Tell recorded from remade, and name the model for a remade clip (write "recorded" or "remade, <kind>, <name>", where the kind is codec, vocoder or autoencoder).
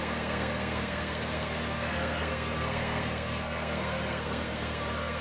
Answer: remade, codec, SNAC